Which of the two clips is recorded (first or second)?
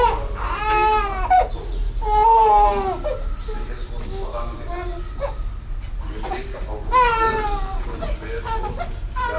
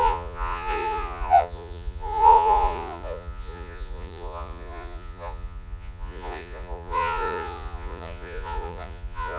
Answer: first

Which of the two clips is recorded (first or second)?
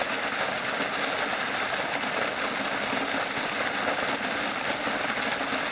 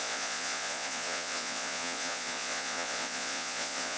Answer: first